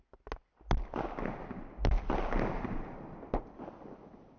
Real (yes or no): yes